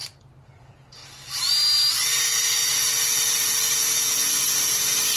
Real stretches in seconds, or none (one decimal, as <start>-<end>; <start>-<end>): 0.0-0.6; 1.0-2.7